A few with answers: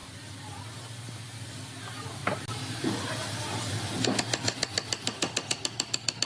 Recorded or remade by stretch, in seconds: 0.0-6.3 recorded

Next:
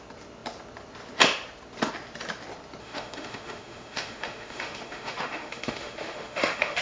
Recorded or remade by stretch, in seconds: 0.0-2.8 recorded; 2.8-6.8 remade

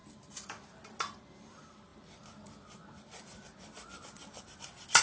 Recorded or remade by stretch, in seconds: 0.0-5.0 recorded

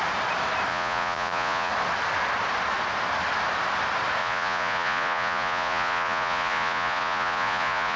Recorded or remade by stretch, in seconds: 0.0-0.7 recorded; 0.7-1.7 remade; 1.7-4.2 recorded; 4.2-8.0 remade